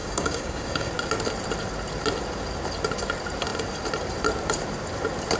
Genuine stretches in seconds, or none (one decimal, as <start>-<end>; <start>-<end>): 0.9-5.4